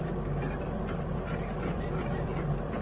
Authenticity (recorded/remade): recorded